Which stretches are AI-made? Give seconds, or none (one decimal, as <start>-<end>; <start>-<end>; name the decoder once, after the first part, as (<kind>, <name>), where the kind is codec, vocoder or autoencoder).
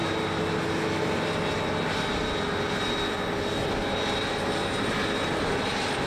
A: 4.6-6.1 (vocoder, BigVGAN v2)